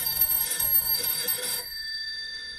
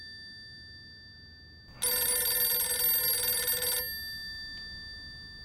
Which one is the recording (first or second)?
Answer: second